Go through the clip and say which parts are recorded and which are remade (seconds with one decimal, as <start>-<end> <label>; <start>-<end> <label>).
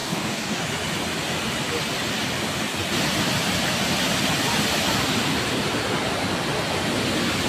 0.0-0.6 remade; 0.6-7.5 recorded